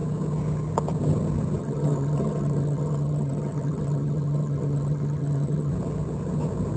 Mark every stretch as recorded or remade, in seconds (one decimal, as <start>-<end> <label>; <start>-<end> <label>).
0.0-1.6 recorded; 1.6-5.7 remade; 5.7-6.8 recorded